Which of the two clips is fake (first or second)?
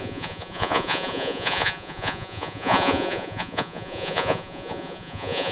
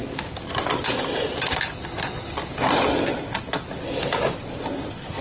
first